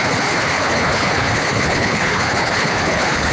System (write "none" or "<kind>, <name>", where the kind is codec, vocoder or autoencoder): codec, HILCodec